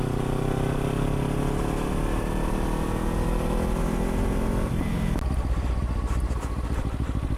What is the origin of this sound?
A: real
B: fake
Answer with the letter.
A